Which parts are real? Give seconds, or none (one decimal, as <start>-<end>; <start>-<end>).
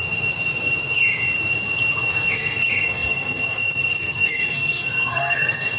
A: 0.0-2.0